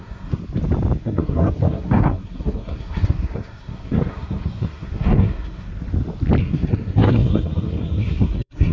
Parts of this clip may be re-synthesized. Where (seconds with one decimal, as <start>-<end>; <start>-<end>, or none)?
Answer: 0.0-0.4; 1.0-5.7; 6.4-8.7